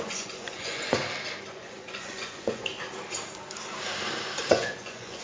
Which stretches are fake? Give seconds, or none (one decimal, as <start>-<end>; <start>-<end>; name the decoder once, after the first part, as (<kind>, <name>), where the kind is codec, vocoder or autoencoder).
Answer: 0.0-1.0 (vocoder, Vocos); 1.5-2.7; 4.4-5.2